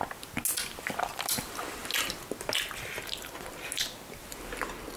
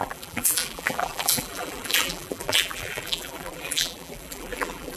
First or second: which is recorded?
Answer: first